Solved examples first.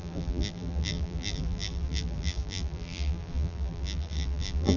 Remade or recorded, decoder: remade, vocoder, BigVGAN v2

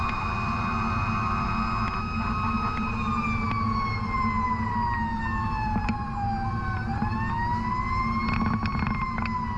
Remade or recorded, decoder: recorded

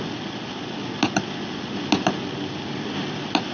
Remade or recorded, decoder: recorded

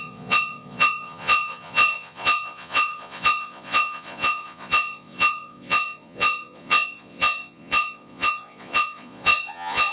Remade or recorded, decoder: remade, vocoder, Vocos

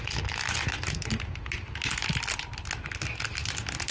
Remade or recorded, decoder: recorded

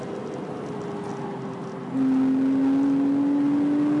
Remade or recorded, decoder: recorded